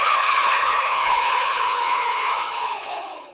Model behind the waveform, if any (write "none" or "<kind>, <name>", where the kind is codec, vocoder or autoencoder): codec, HILCodec